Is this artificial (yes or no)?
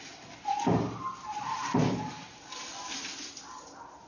no